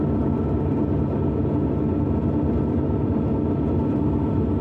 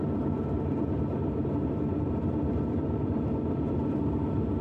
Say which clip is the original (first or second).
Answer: first